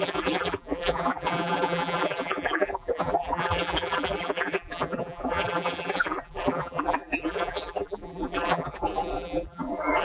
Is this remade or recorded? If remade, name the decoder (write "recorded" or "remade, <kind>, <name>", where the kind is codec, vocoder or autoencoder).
remade, vocoder, BigVGAN v2